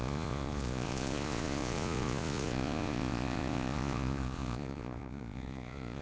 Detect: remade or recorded remade